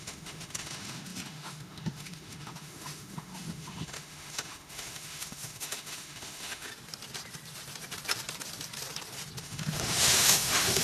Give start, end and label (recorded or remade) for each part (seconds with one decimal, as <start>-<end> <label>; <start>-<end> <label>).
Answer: 0.0-6.7 remade; 6.7-9.4 recorded; 9.4-10.8 remade